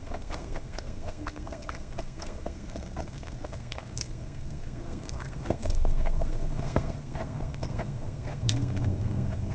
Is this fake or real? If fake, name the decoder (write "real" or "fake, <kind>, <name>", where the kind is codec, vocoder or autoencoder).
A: fake, codec, SNAC